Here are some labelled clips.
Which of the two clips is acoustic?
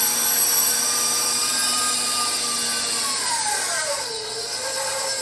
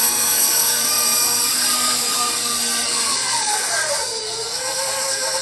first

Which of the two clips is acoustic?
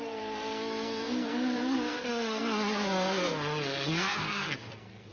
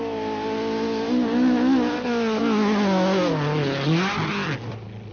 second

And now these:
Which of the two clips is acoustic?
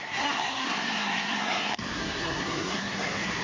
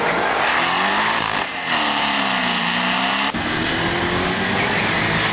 second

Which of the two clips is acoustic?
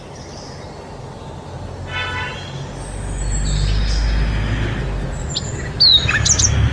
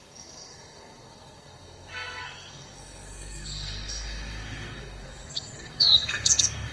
first